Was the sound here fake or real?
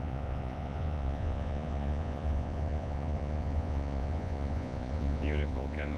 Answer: fake